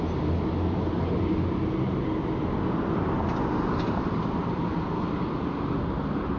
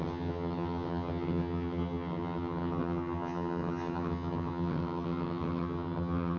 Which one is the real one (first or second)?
first